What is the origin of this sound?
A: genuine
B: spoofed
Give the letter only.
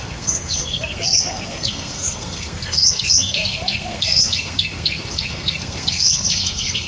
B